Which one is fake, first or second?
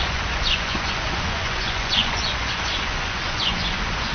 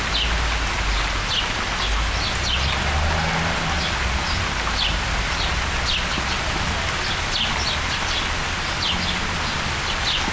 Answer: first